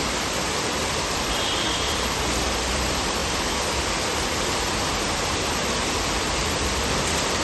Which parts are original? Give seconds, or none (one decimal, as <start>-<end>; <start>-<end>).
3.2-4.9